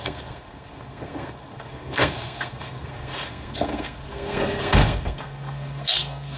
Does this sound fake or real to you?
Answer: fake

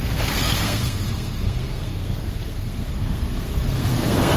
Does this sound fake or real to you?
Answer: fake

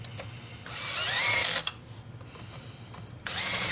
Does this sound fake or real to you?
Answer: real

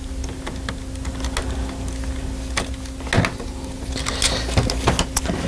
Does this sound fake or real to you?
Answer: real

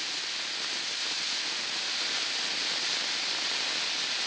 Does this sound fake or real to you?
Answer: real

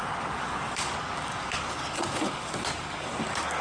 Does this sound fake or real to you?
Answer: fake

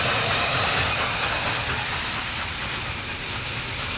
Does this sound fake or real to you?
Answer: real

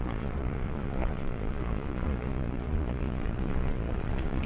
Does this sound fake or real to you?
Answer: fake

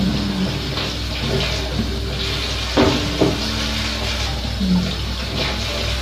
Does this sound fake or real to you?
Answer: real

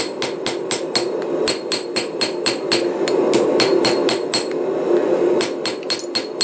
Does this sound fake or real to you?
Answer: real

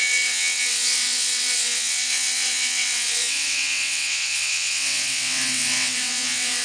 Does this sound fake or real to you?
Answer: fake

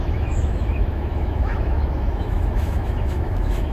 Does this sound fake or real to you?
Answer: fake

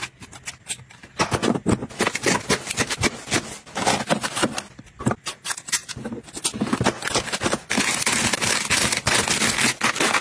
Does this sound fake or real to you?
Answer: real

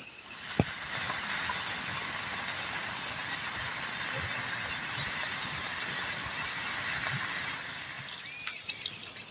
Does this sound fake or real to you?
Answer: real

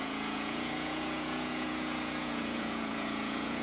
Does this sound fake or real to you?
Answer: fake